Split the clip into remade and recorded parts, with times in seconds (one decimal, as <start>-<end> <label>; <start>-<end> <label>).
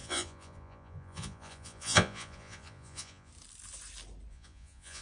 0.0-3.3 remade; 3.3-4.3 recorded; 4.3-5.0 remade